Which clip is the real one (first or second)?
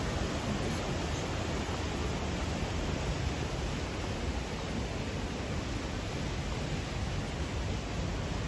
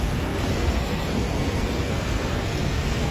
first